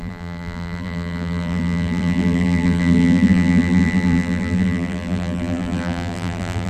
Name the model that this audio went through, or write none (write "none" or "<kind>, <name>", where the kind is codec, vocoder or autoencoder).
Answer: vocoder, BigVGAN v2